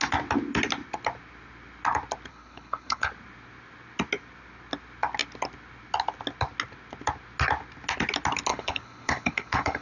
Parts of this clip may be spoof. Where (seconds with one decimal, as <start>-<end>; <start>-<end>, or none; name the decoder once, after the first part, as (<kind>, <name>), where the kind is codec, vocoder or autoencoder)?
2.3-3.1 (codec, HILCodec); 8.5-9.8